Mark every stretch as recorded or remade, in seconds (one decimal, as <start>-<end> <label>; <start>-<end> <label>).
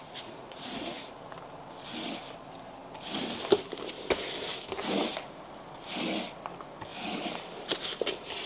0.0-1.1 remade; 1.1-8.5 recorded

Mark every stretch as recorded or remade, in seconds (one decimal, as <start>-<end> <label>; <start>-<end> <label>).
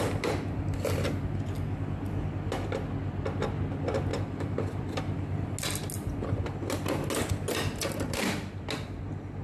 0.0-4.1 recorded; 4.1-5.4 remade; 5.4-9.4 recorded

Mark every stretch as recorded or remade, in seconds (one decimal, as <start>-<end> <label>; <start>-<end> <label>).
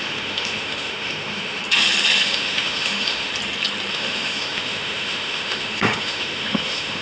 0.0-1.6 remade; 1.6-2.2 recorded; 2.2-3.3 remade; 3.3-3.9 recorded; 3.9-7.0 remade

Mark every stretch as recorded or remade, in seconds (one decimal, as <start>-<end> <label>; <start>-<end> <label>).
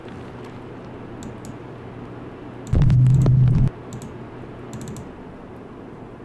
0.0-6.2 recorded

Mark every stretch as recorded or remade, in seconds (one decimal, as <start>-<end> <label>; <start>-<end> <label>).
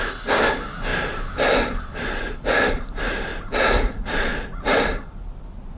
0.0-3.3 recorded; 3.3-4.7 remade; 4.7-5.8 recorded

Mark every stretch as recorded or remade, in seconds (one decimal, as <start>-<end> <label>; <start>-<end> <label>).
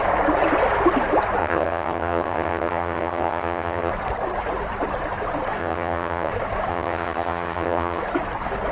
0.0-1.4 recorded; 1.4-3.9 remade; 3.9-5.6 recorded; 5.6-6.3 remade; 6.3-6.7 recorded; 6.7-8.0 remade; 8.0-8.7 recorded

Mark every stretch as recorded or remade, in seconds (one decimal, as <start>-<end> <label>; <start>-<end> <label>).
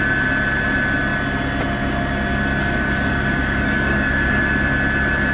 0.0-2.6 recorded; 2.6-4.4 remade; 4.4-5.3 recorded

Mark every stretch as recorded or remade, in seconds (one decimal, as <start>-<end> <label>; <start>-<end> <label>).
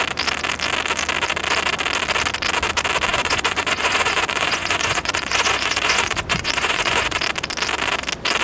0.0-3.1 recorded; 3.1-7.2 remade; 7.2-8.4 recorded